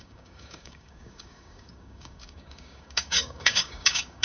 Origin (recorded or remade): remade